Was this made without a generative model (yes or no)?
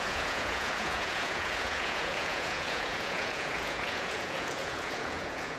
no